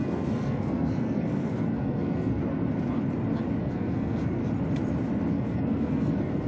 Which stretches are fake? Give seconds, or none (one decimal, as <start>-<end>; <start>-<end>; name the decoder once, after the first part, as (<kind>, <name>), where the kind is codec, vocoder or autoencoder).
0.0-2.4 (codec, SNAC); 3.6-4.4; 5.3-6.5